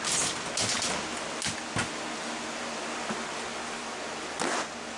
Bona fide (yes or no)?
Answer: yes